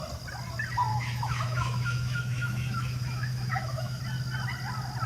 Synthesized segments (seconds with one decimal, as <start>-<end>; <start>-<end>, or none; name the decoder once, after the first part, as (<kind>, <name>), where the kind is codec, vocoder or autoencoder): 0.9-4.0 (autoencoder, DAC-VAE)